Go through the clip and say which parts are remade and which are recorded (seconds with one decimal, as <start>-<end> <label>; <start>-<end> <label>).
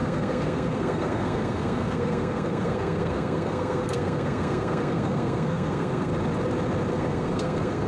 0.0-6.1 remade; 6.1-6.9 recorded; 6.9-7.9 remade